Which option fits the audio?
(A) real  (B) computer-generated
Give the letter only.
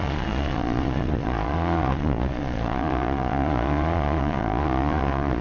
B